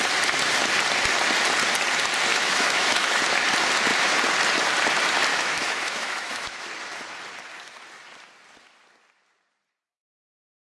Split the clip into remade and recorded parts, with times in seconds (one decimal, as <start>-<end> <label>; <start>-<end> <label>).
0.0-2.3 recorded; 2.3-3.2 remade; 3.2-5.3 recorded; 5.3-6.7 remade; 6.7-10.8 recorded